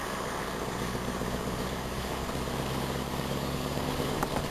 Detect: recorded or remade remade